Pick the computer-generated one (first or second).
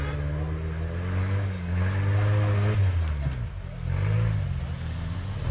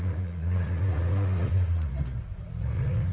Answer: second